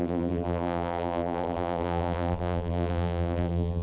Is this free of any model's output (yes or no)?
no